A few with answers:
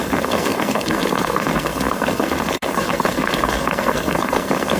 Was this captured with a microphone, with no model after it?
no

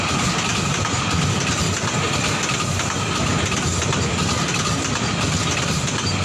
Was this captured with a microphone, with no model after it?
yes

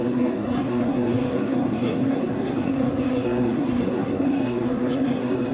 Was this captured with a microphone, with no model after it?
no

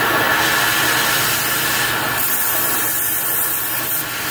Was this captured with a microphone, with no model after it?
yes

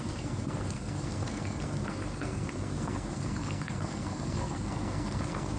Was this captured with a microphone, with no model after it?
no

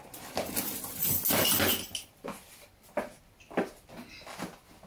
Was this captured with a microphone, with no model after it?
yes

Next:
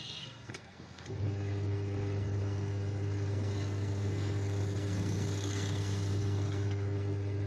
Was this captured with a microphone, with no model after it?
no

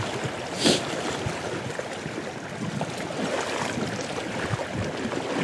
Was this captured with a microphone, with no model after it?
yes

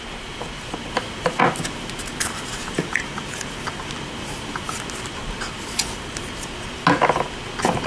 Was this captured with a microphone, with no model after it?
yes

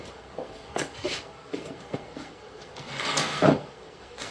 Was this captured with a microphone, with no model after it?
no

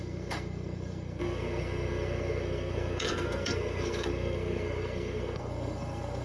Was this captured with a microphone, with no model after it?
no